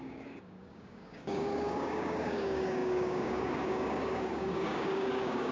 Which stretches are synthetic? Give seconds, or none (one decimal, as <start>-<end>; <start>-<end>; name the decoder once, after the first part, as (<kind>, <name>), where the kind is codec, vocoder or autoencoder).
0.0-5.5 (codec, DAC)